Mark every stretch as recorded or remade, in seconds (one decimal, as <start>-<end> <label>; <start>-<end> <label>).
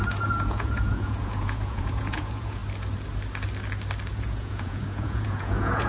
0.0-2.6 remade; 2.6-4.1 recorded; 4.1-5.9 remade